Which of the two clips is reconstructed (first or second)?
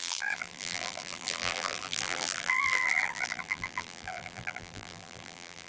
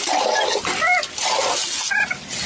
first